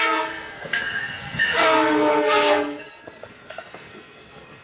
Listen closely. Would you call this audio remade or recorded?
remade